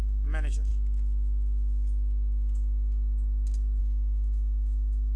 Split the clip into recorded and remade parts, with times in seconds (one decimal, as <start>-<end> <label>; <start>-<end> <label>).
0.0-0.7 remade; 0.7-3.8 recorded; 3.8-5.2 remade